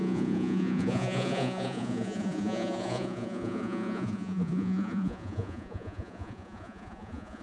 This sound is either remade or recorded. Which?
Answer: remade